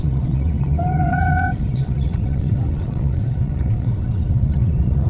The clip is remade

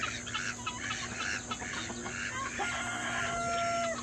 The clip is recorded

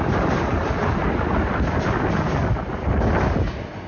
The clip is recorded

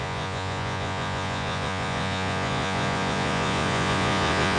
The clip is remade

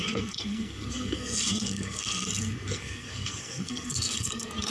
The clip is remade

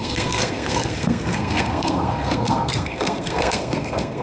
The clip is remade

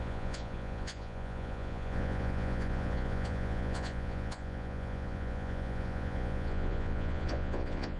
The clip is remade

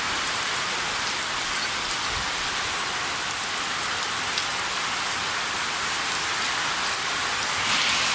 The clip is recorded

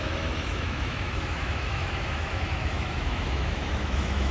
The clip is remade